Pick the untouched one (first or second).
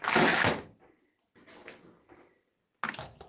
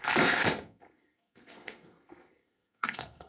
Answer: first